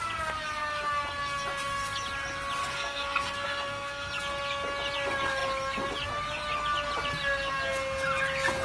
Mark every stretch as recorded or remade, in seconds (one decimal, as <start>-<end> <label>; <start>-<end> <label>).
0.0-2.6 recorded; 2.6-4.1 remade; 4.1-8.6 recorded